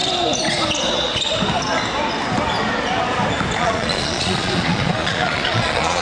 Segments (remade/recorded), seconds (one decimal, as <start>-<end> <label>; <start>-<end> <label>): 0.0-3.6 recorded; 3.6-6.0 remade